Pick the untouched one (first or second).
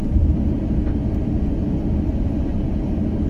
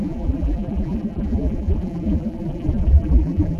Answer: first